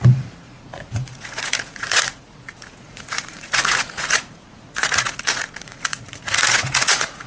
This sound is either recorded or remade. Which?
remade